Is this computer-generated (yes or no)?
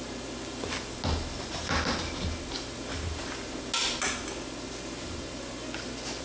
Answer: no